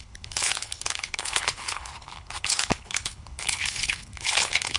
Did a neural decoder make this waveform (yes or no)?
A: yes